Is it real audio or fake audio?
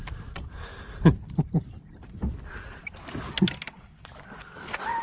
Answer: real